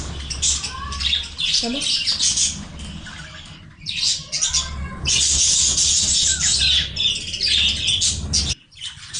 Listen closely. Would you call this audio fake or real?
real